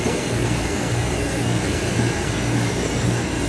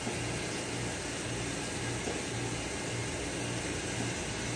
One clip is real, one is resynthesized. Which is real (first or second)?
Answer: second